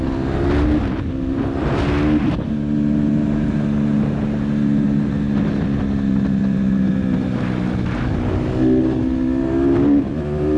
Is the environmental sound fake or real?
real